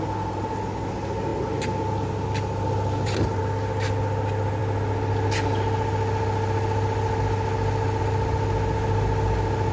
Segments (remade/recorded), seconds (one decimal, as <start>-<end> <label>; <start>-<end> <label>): 0.0-9.7 recorded

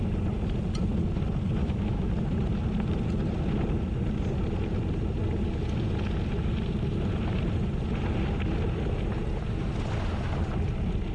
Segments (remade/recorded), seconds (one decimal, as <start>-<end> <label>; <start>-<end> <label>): 0.0-1.6 recorded; 1.6-2.1 remade; 2.1-11.1 recorded